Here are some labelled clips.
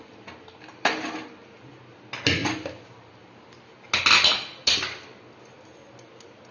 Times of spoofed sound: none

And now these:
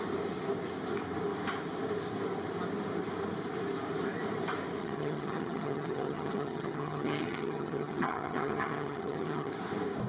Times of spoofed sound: 4.8-9.5

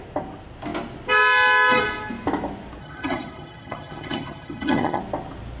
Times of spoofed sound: 2.8-5.0

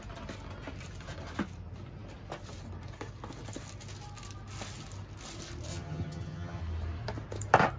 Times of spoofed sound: 5.7-6.6